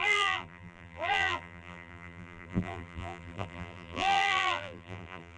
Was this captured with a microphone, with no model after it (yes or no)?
no